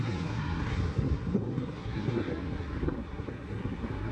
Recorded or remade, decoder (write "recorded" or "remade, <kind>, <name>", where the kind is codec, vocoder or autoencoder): remade, codec, SNAC